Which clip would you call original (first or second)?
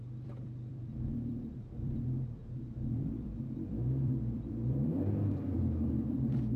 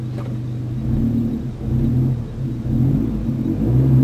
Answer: second